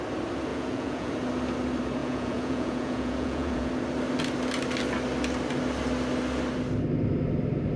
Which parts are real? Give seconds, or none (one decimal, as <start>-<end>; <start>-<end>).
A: 0.0-0.5; 1.1-2.0; 3.7-7.8